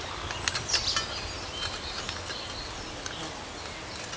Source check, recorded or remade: recorded